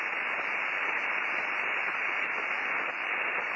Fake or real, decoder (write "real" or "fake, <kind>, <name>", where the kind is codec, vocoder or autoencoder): real